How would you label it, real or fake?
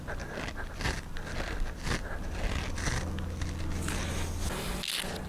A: real